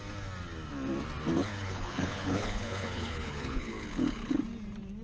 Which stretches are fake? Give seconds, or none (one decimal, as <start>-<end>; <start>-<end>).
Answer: 1.4-4.4